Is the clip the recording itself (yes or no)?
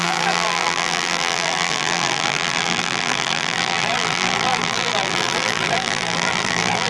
no